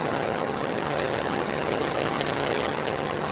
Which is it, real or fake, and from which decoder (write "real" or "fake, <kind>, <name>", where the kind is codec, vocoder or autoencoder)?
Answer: fake, vocoder, HiFi-GAN